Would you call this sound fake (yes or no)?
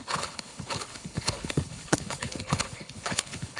yes